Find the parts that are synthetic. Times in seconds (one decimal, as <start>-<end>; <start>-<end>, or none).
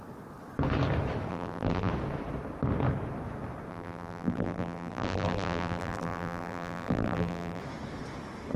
1.3-1.9; 3.7-7.6